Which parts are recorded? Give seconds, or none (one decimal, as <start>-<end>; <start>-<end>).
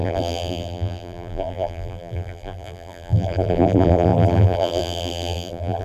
none